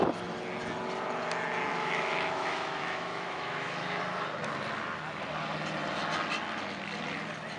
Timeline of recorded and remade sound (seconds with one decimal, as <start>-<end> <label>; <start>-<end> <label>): 0.0-1.7 recorded; 1.7-4.0 remade; 4.0-7.6 recorded